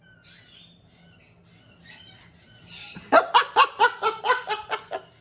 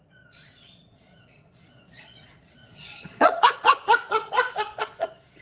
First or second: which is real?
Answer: first